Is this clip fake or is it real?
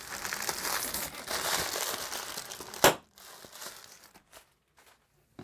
real